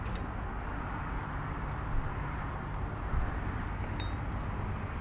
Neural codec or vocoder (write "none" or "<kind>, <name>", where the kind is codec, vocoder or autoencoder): none